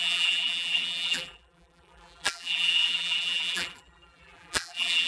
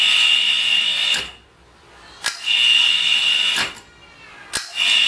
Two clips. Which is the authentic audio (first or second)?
second